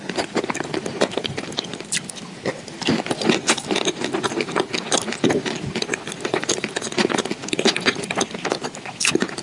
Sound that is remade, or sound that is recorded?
recorded